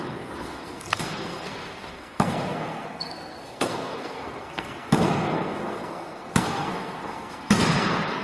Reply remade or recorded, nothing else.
remade